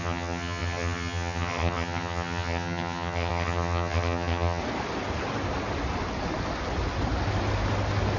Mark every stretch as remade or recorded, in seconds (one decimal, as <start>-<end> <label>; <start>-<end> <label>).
0.0-4.6 remade; 4.6-8.2 recorded